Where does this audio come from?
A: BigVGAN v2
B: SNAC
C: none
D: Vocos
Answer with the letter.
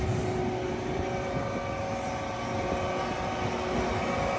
C